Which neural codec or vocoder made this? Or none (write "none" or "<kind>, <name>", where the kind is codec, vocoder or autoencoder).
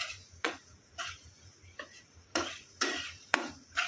vocoder, Vocos